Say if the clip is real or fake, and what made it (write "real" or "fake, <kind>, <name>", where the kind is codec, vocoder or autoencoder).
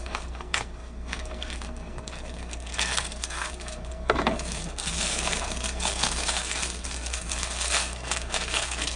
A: fake, codec, SNAC